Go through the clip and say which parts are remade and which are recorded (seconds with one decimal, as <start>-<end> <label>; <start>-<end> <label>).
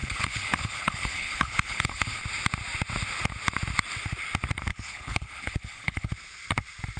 0.0-2.2 remade; 2.2-4.7 recorded; 4.7-6.1 remade; 6.1-7.0 recorded